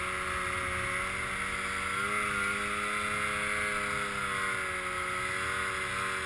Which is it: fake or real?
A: real